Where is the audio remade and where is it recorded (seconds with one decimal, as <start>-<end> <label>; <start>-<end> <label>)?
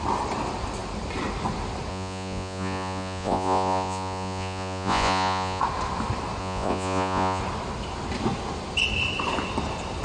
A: 0.0-1.9 recorded; 1.9-5.6 remade; 5.6-6.4 recorded; 6.4-7.4 remade; 7.4-10.0 recorded